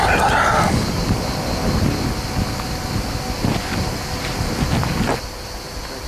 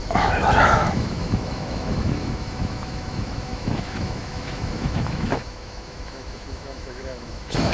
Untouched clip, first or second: first